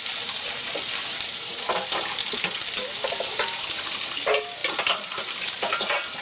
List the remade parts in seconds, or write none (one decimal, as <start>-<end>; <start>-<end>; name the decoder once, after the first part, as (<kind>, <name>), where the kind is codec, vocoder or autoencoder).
none